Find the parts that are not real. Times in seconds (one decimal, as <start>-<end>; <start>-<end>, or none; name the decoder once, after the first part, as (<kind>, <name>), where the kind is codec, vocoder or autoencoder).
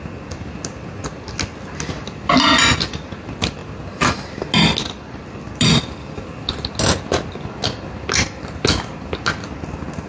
none